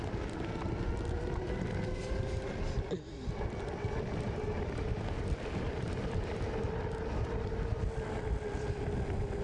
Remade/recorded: recorded